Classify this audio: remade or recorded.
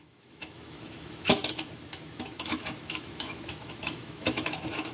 remade